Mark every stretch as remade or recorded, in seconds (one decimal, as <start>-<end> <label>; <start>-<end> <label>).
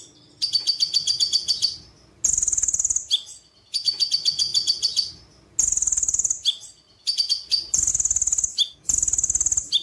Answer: 0.0-9.8 recorded